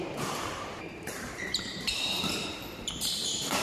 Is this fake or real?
fake